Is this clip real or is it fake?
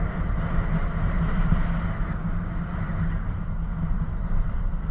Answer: real